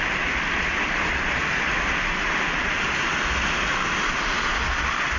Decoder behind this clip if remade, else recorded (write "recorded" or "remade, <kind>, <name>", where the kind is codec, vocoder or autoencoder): recorded